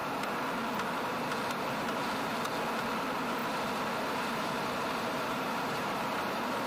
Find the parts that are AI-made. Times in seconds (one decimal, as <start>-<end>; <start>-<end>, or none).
1.5-2.3; 3.0-3.4; 4.0-6.7